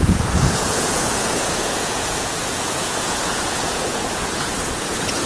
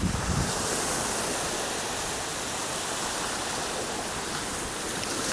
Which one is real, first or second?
second